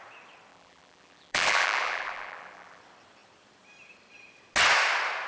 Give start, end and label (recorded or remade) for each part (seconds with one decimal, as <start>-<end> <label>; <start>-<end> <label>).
0.0-0.5 recorded; 0.5-2.8 remade; 2.8-5.3 recorded